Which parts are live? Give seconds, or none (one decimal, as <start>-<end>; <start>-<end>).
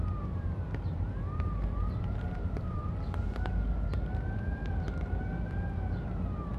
3.5-3.9; 4.7-6.6